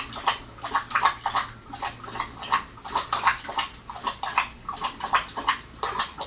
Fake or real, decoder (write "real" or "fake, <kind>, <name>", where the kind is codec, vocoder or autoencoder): real